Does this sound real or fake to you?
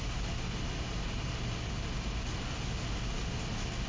real